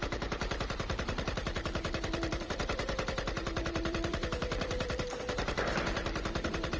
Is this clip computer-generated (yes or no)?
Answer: yes